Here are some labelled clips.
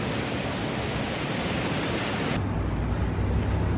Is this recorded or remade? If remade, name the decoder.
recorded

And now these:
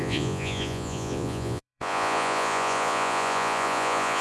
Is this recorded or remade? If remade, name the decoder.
remade, vocoder, Vocos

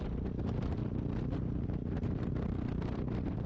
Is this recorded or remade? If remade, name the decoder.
recorded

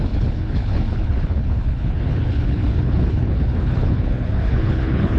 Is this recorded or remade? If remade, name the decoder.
remade, codec, HILCodec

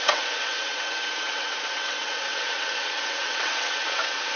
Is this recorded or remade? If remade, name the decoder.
remade, vocoder, WaveNeXt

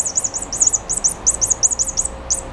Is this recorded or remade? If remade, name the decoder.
recorded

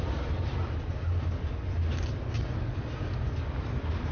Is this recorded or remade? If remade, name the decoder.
recorded